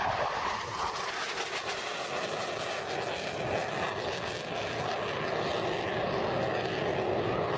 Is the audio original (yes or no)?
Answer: yes